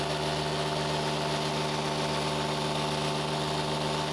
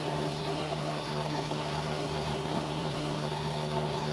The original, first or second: first